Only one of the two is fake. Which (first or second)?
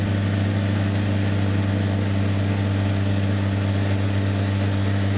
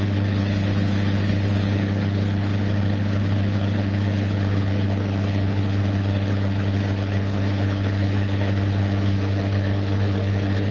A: second